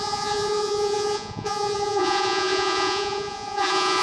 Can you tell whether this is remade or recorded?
remade